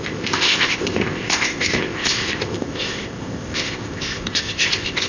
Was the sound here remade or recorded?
remade